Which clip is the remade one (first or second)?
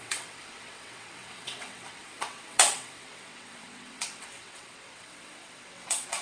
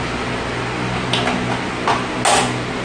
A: first